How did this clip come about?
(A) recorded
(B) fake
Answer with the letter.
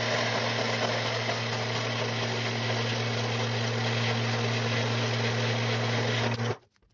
A